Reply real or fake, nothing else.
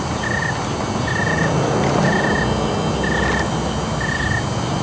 real